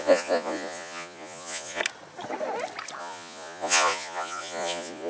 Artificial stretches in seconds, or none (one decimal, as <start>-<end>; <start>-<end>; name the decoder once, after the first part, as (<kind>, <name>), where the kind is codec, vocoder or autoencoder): 0.0-1.8 (vocoder, Vocos); 3.0-5.1